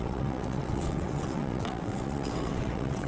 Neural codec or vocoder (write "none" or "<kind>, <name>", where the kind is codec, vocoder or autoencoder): vocoder, WaveNeXt